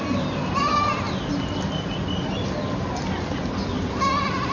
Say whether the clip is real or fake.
real